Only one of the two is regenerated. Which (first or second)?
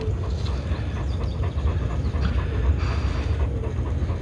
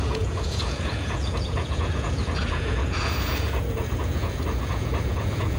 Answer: second